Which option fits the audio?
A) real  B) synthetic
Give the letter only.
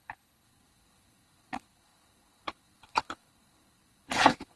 B